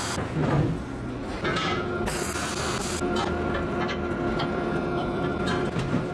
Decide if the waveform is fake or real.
real